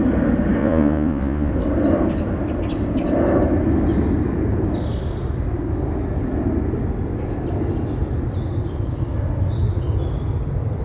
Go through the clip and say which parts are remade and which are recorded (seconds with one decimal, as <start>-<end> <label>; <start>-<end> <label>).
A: 0.0-0.6 recorded; 0.6-1.5 remade; 1.5-10.8 recorded